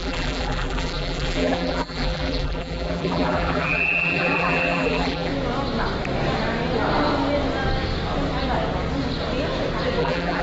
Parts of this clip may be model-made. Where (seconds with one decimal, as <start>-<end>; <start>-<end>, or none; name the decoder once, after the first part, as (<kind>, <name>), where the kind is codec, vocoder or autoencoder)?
0.0-5.3 (vocoder, BigVGAN v2); 10.0-10.4

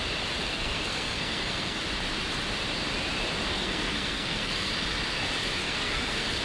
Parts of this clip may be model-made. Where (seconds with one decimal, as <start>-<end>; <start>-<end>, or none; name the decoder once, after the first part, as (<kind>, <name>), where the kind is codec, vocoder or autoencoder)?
0.4-1.8 (codec, SNAC); 3.5-4.7; 5.6-6.4

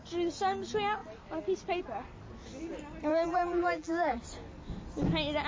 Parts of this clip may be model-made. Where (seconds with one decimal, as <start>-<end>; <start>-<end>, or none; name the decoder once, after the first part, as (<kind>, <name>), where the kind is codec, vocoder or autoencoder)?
3.1-4.2 (vocoder, BigVGAN v2)

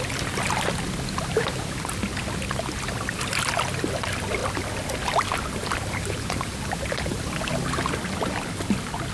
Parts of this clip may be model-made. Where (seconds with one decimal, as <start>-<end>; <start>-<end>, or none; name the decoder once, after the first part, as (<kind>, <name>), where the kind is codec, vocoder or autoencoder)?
none

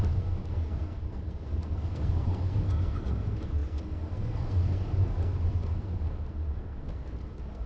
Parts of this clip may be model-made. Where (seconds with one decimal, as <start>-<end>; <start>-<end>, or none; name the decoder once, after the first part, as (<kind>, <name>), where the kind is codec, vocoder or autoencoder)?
0.0-7.7 (codec, SNAC)